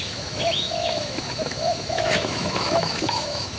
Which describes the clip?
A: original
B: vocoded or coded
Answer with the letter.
B